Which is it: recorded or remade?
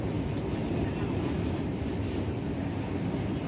recorded